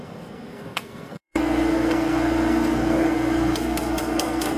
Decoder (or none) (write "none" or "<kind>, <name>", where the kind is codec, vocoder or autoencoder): codec, SNAC